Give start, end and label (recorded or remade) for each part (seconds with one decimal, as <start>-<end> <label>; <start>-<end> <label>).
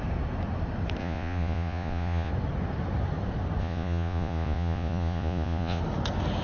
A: 0.0-1.0 recorded; 1.0-2.3 remade; 2.3-3.6 recorded; 3.6-5.8 remade; 5.8-6.4 recorded